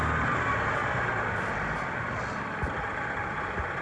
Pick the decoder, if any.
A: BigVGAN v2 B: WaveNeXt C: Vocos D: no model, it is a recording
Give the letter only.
D